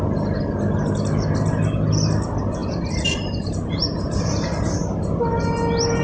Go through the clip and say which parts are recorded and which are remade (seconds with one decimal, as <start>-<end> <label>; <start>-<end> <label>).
0.0-6.0 recorded